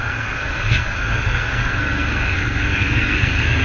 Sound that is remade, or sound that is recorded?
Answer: remade